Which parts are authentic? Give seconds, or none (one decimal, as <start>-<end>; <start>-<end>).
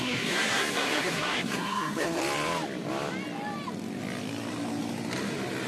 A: 2.2-5.7